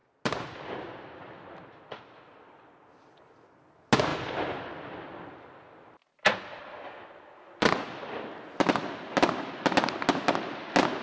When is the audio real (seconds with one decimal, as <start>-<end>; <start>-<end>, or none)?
0.0-4.1; 4.7-11.0